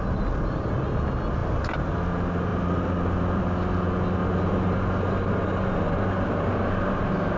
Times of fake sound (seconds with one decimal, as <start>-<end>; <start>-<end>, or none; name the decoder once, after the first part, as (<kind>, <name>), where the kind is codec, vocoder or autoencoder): none